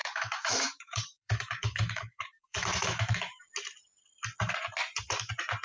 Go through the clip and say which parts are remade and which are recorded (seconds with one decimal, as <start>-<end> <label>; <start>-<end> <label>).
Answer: 0.0-3.4 remade; 3.4-5.6 recorded